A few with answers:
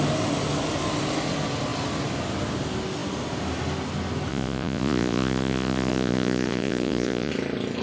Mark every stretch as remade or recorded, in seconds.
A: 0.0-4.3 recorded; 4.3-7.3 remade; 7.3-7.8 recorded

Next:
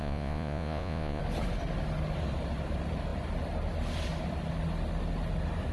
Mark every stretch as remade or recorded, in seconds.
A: 0.0-1.2 remade; 1.2-5.7 recorded

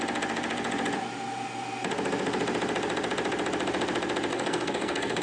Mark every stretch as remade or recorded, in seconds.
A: 0.0-4.3 recorded; 4.3-5.2 remade

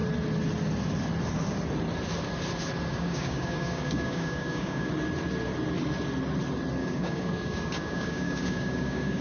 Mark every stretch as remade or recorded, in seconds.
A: 0.0-2.9 recorded; 2.9-4.9 remade; 4.9-6.8 recorded; 6.8-9.2 remade

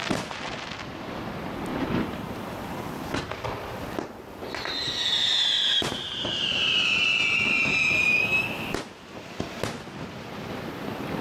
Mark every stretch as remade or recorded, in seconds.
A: 0.0-1.7 recorded; 1.7-3.2 remade; 3.2-5.2 recorded; 5.2-7.0 remade; 7.0-7.6 recorded; 7.6-8.4 remade; 8.4-11.2 recorded

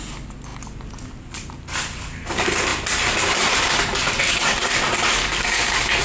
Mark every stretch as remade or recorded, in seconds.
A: 0.0-5.2 recorded; 5.2-6.0 remade